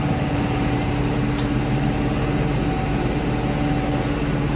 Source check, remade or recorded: recorded